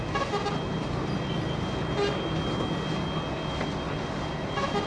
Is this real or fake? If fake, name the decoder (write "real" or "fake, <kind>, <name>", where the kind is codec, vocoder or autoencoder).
real